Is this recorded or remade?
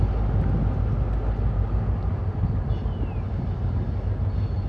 recorded